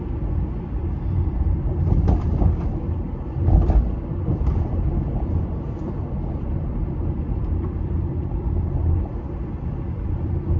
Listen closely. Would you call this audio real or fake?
fake